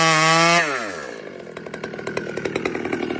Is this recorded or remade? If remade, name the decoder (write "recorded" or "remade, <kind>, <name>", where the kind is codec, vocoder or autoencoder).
recorded